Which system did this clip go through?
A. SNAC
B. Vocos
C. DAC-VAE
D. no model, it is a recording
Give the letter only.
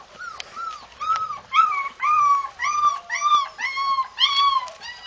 D